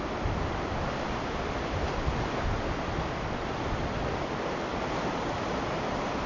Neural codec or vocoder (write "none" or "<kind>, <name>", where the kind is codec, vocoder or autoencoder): none